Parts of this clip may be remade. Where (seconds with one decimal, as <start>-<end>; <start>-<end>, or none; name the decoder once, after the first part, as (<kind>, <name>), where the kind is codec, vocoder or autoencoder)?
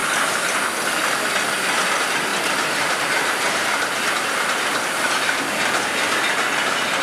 2.3-5.4 (vocoder, BigVGAN v2)